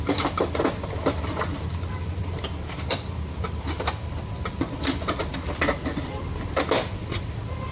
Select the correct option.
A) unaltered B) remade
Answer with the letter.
B